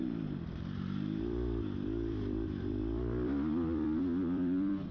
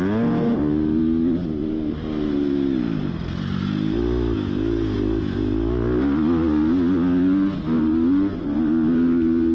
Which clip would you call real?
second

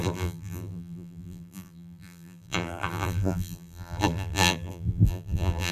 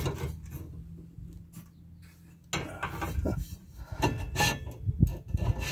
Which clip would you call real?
second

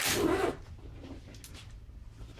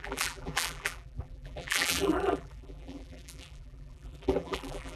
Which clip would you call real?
first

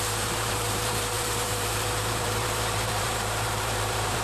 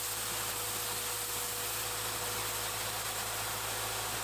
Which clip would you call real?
second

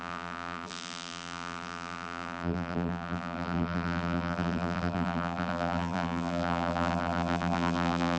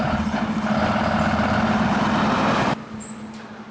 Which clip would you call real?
second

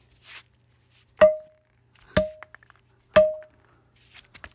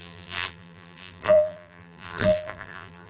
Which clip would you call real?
first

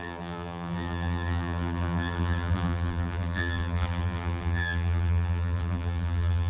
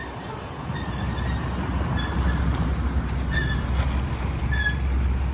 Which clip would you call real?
second